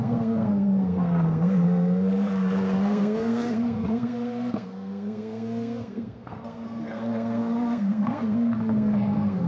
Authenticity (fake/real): fake